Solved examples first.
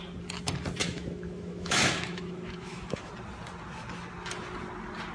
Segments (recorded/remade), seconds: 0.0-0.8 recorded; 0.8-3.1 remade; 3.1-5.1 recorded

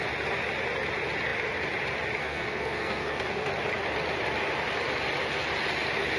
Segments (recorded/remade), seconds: 0.0-2.2 recorded; 2.2-3.5 remade; 3.5-6.2 recorded

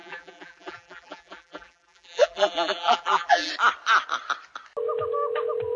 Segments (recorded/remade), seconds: 0.0-3.5 remade; 3.5-5.8 recorded

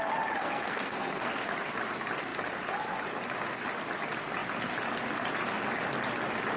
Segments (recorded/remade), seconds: 0.0-0.4 recorded; 0.4-1.3 remade; 1.3-6.6 recorded

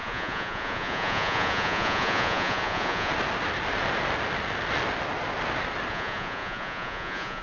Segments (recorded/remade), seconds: 0.0-3.1 remade; 3.1-5.9 recorded; 5.9-7.4 remade

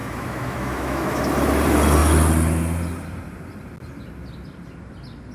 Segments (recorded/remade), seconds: 0.0-1.2 remade; 1.2-5.3 recorded